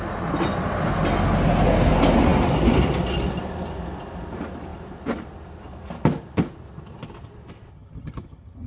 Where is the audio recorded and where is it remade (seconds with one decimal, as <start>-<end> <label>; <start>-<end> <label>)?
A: 0.0-7.7 recorded; 7.7-8.7 remade